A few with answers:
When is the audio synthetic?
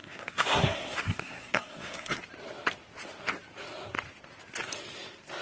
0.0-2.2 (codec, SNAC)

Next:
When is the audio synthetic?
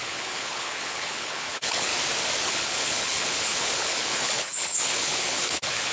0.0-1.9 (codec, HILCodec); 2.5-5.9